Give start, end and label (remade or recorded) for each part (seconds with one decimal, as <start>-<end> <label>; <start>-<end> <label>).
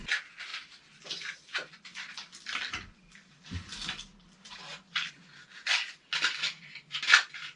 0.0-0.5 recorded; 0.5-5.1 remade; 5.1-7.6 recorded